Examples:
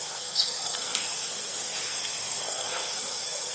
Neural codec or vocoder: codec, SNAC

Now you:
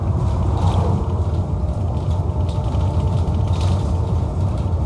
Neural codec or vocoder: vocoder, BigVGAN v2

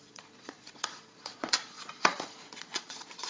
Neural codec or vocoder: vocoder, Vocos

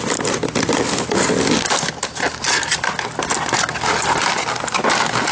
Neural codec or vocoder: none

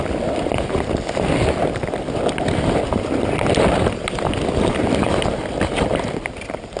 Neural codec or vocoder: none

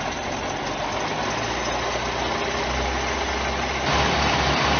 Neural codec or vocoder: none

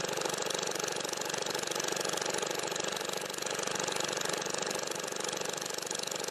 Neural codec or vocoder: none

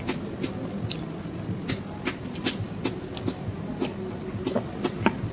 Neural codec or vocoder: none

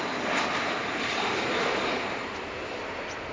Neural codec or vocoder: vocoder, BigVGAN v2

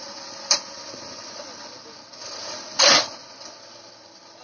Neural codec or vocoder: none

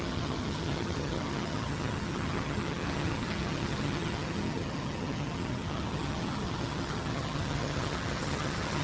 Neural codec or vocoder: vocoder, HiFi-GAN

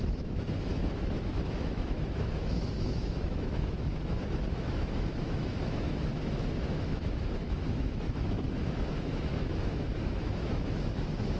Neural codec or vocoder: autoencoder, DAC-VAE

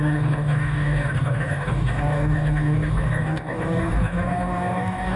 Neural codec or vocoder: codec, DAC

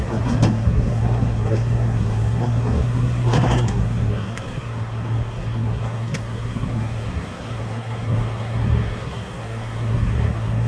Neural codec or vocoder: codec, SNAC